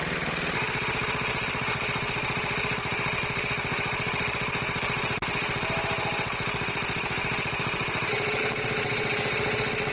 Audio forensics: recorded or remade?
recorded